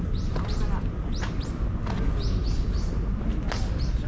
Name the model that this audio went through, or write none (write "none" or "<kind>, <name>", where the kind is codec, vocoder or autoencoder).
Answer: none